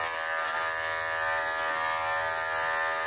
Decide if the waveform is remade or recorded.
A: recorded